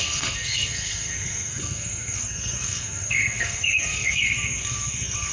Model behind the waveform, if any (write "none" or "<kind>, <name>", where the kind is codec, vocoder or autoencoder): codec, SNAC